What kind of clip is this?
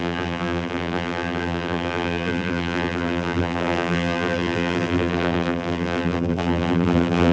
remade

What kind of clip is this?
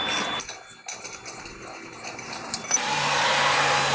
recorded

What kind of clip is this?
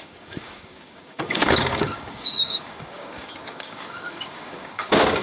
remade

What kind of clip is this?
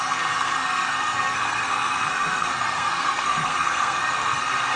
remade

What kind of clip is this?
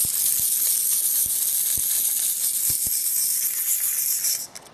recorded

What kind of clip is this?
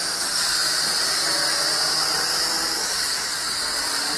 recorded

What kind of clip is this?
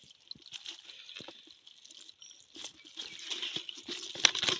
recorded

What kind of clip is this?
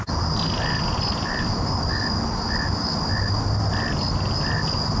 recorded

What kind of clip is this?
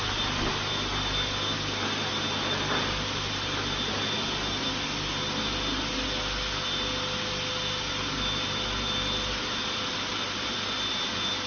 recorded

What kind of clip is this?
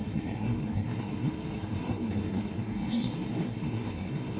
remade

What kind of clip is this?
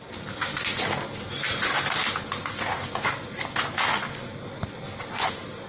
recorded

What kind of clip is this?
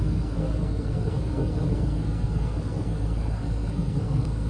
remade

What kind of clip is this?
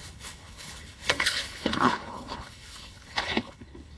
remade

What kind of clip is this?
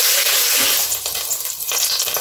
recorded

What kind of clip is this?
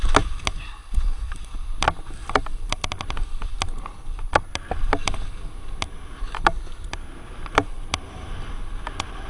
recorded